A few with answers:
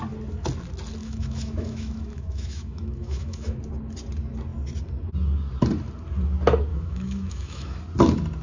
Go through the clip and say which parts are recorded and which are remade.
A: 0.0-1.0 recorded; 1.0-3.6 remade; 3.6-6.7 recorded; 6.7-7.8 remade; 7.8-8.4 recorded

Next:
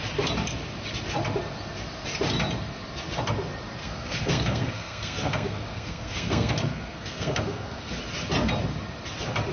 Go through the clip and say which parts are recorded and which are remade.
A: 0.0-3.8 recorded; 3.8-8.0 remade; 8.0-9.5 recorded

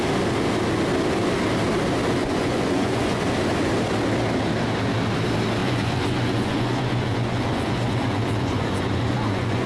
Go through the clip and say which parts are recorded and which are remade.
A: 0.0-2.2 recorded; 2.2-3.2 remade; 3.2-5.6 recorded; 5.6-9.7 remade

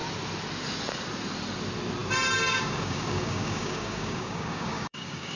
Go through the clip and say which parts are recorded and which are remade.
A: 0.0-2.5 recorded; 2.5-5.4 remade

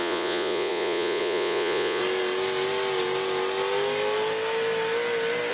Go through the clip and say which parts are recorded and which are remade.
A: 0.0-2.0 remade; 2.0-5.5 recorded

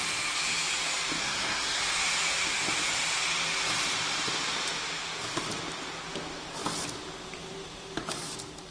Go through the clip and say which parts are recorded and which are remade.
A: 0.0-1.2 recorded; 1.2-1.8 remade; 1.8-8.7 recorded